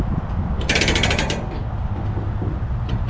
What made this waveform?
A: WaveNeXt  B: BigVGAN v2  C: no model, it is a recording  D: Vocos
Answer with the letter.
C